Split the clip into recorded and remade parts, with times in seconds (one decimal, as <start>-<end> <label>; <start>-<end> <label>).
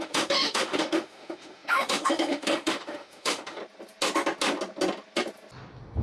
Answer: 0.0-3.6 remade; 3.6-6.0 recorded